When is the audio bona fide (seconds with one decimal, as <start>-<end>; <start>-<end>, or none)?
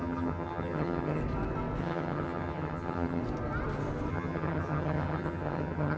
1.2-1.8; 3.2-4.1